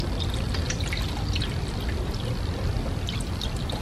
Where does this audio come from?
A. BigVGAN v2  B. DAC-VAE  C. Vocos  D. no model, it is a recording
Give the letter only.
D